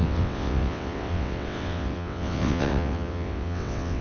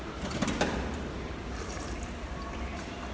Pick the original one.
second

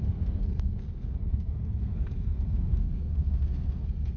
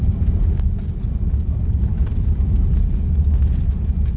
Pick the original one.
second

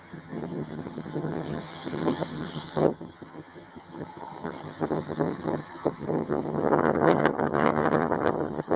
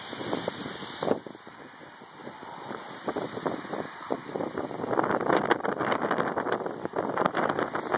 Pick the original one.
second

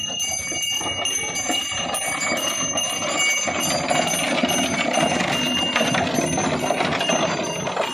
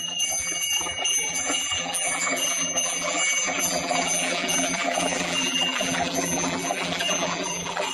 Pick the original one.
first